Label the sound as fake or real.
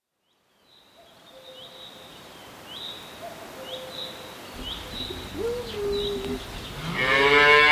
real